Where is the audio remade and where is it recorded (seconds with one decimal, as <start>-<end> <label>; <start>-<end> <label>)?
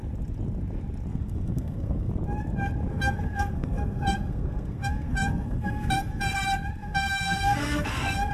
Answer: 0.0-1.1 recorded; 1.1-2.1 remade; 2.1-2.9 recorded; 2.9-6.2 remade; 6.2-6.8 recorded; 6.8-8.3 remade